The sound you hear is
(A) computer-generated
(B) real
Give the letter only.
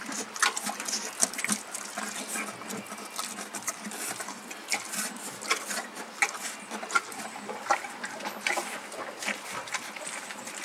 B